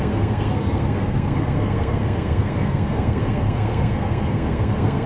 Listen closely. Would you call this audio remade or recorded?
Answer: remade